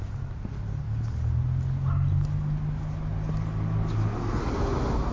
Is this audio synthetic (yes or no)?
no